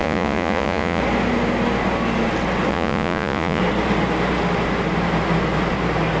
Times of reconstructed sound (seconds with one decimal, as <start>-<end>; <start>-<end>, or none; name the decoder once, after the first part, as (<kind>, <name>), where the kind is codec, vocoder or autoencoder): 0.0-1.0 (vocoder, Vocos); 2.7-3.6